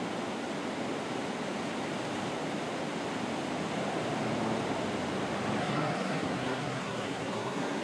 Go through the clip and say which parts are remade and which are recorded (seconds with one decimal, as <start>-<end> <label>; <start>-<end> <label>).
0.0-5.6 recorded; 5.6-7.8 remade